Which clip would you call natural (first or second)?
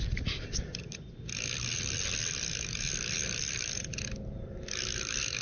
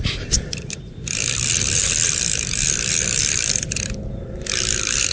first